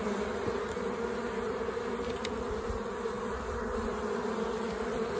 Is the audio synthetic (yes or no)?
no